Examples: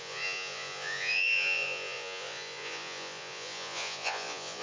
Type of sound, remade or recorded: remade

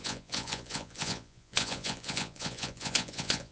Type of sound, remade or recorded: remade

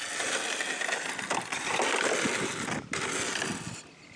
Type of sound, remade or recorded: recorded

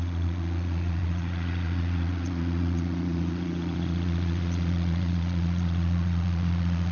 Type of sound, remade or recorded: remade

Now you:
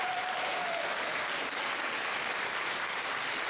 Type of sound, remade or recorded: recorded